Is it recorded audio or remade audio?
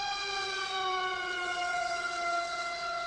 remade